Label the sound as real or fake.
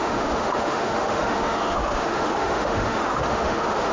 fake